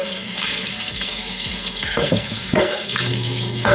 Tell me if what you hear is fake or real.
fake